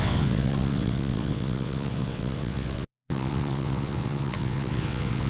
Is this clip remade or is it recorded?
remade